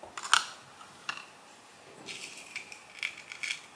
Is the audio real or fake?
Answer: real